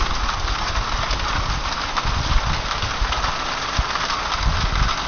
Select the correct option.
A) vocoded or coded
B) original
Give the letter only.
B